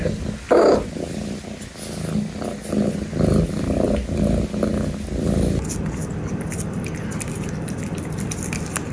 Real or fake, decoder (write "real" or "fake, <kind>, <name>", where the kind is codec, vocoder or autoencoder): real